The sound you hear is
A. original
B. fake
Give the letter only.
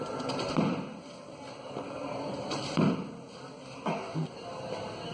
A